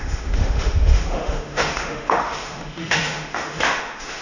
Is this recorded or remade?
remade